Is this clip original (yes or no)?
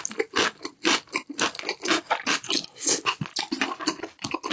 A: yes